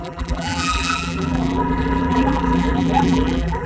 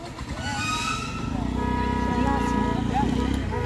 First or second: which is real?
second